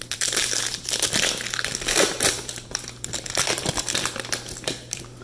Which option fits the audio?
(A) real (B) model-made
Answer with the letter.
B